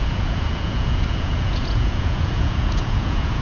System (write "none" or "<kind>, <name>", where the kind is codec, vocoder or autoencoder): vocoder, Vocos